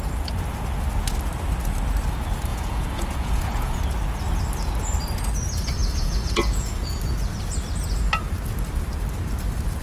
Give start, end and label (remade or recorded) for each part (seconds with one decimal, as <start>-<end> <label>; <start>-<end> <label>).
0.0-2.5 recorded; 2.5-3.8 remade; 3.8-5.8 recorded; 5.8-7.0 remade; 7.0-9.8 recorded